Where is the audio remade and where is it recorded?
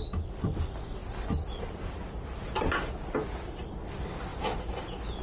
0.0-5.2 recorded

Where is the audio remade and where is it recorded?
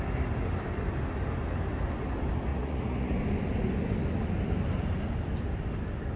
0.0-2.5 recorded; 2.5-3.2 remade; 3.2-6.2 recorded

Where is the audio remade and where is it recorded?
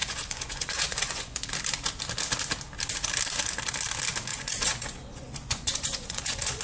0.0-1.5 remade; 1.5-4.3 recorded; 4.3-6.6 remade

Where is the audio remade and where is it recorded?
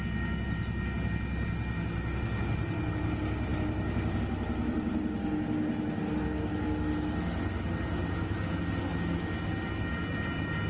0.0-10.7 recorded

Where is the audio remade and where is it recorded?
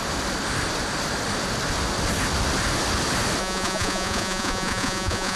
0.0-3.4 recorded; 3.4-5.4 remade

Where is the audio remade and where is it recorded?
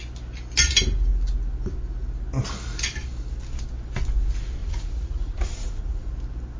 0.0-4.6 recorded; 4.6-6.1 remade; 6.1-6.6 recorded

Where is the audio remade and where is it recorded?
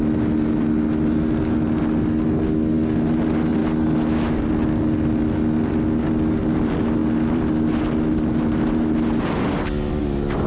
0.0-10.5 recorded